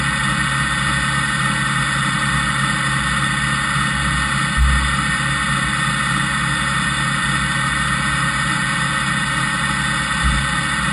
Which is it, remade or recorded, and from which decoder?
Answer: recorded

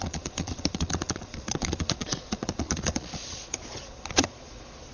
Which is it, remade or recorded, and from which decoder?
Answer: remade, vocoder, Vocos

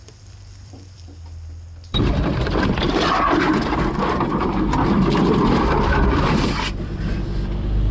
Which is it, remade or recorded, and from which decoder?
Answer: remade, vocoder, BigVGAN v2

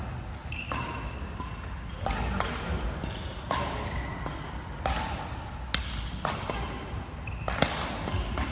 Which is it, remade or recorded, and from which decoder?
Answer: recorded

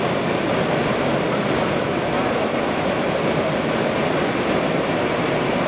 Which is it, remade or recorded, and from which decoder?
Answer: recorded